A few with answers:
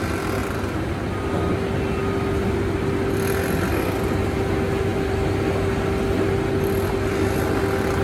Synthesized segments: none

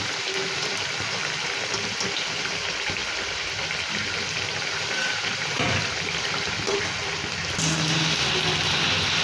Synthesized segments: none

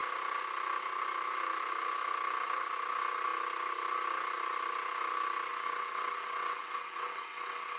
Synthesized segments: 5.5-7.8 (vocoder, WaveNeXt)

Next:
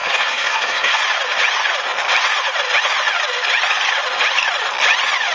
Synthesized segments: 0.0-1.0 (codec, SNAC)